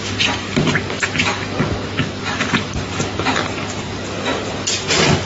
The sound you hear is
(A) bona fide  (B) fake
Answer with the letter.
A